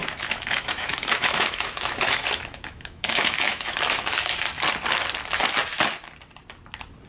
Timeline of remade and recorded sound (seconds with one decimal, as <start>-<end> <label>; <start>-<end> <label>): 0.0-4.3 remade; 4.3-7.1 recorded